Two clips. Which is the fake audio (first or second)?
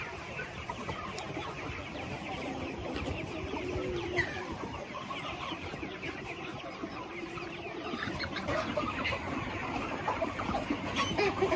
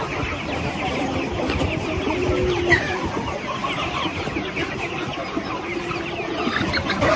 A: first